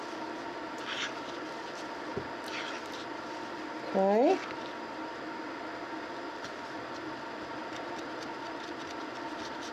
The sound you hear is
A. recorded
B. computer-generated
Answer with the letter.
A